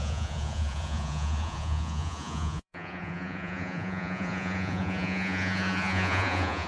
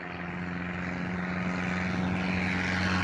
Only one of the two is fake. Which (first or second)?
first